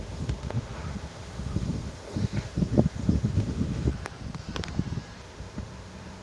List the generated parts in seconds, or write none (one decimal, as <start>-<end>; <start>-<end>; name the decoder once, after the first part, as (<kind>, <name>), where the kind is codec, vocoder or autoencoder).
0.0-3.9 (autoencoder, DAC-VAE); 5.2-6.2